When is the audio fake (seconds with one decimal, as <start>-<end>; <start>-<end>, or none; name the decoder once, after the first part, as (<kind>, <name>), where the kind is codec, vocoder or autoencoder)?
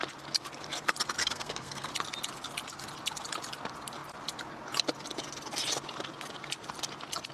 1.2-1.9 (codec, SNAC)